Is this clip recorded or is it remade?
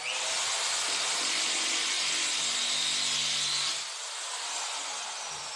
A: recorded